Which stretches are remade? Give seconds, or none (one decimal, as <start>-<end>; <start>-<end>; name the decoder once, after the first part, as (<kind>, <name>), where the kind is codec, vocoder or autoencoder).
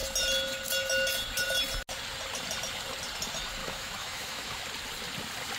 3.6-4.6 (autoencoder, DAC-VAE)